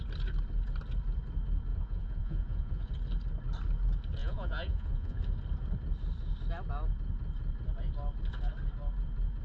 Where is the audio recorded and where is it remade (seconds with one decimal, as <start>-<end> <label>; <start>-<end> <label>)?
0.0-1.7 recorded; 1.7-2.9 remade; 2.9-4.2 recorded; 4.2-5.2 remade; 5.2-9.4 recorded